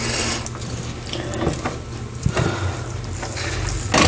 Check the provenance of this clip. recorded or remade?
recorded